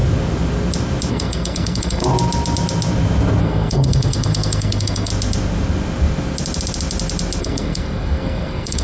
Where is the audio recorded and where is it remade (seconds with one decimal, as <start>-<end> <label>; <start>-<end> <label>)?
0.0-1.1 recorded; 1.1-2.0 remade; 2.0-3.4 recorded; 3.4-5.1 remade; 5.1-7.4 recorded; 7.4-8.8 remade